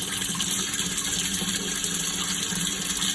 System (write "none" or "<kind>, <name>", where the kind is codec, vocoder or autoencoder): none